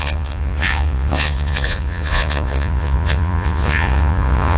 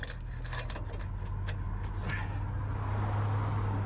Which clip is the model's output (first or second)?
first